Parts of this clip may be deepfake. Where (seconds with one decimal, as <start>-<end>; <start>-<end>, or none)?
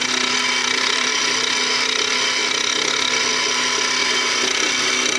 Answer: 0.6-1.2; 4.0-4.7